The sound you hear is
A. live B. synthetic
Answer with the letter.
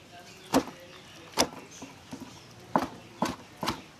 A